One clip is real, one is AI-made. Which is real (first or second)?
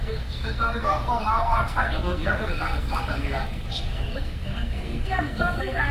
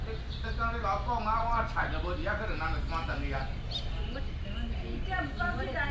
second